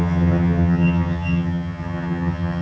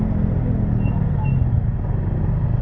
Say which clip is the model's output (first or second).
first